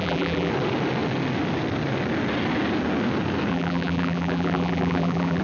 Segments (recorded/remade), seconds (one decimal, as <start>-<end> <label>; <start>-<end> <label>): 0.0-0.5 remade; 0.5-3.5 recorded; 3.5-5.4 remade